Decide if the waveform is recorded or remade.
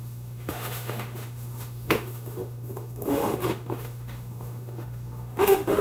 remade